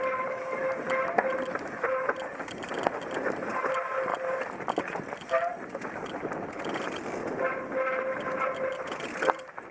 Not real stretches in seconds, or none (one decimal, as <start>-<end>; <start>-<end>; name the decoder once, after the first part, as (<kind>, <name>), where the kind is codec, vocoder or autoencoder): none